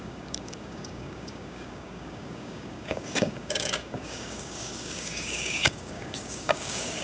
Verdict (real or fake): fake